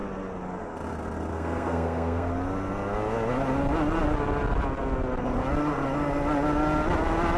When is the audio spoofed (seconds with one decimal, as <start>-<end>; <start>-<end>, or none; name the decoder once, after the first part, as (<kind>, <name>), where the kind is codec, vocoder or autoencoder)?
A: 1.3-2.3 (codec, SNAC)